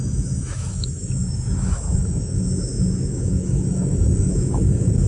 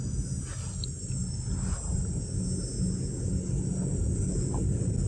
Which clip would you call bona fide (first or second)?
second